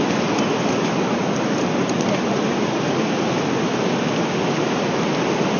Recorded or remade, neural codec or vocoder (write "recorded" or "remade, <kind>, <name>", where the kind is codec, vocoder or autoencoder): recorded